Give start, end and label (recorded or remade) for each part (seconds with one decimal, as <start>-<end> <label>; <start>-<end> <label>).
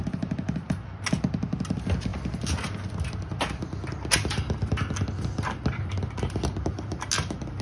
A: 0.0-7.6 recorded